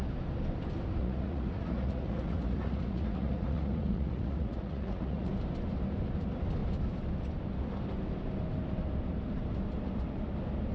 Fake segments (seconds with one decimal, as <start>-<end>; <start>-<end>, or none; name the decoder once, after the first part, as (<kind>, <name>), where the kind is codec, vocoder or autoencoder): 1.0-5.3 (vocoder, Vocos)